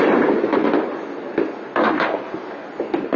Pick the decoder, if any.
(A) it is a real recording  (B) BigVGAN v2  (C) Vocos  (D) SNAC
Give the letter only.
A